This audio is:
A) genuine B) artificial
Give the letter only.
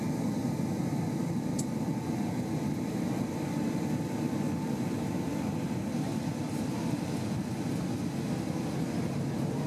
A